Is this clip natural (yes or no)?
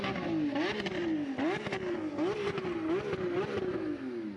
yes